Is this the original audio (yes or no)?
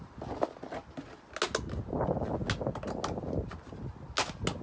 yes